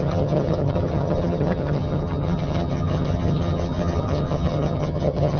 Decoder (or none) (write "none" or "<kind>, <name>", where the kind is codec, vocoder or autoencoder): vocoder, HiFi-GAN